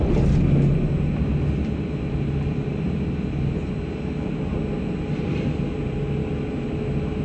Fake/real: real